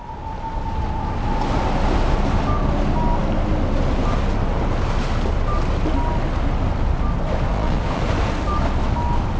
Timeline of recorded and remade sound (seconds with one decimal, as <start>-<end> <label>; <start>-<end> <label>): 0.0-7.5 recorded; 7.5-8.0 remade; 8.0-9.4 recorded